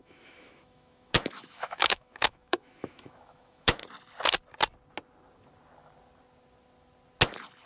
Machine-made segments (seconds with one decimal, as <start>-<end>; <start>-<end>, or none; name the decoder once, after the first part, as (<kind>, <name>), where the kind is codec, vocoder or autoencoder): 0.0-3.8 (autoencoder, DAC-VAE)